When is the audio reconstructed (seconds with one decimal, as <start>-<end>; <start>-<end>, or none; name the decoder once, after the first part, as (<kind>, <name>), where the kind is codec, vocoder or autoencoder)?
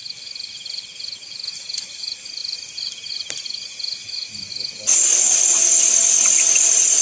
none